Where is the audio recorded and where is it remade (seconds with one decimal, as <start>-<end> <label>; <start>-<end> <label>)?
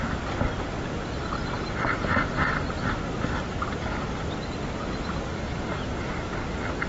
0.0-5.3 recorded; 5.3-5.8 remade; 5.8-6.9 recorded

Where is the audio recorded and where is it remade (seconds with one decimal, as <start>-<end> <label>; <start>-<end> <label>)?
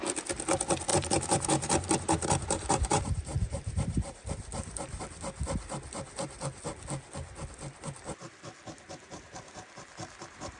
0.0-0.9 recorded; 0.9-5.0 remade; 5.0-10.6 recorded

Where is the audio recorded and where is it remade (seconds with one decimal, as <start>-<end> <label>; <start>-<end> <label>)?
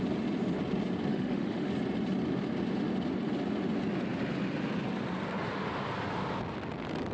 0.0-1.1 recorded; 1.1-1.7 remade; 1.7-7.1 recorded